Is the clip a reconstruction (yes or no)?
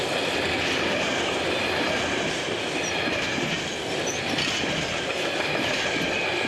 no